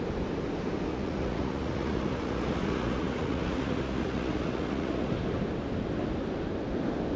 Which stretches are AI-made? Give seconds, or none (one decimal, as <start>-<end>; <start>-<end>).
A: 0.9-5.1